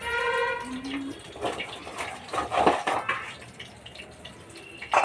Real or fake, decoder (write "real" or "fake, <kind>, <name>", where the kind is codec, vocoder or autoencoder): real